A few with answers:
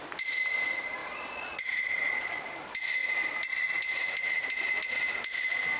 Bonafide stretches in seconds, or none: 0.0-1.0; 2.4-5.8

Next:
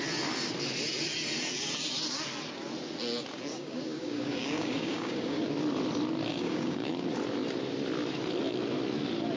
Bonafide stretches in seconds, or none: 0.0-3.5; 5.4-6.3; 6.9-9.4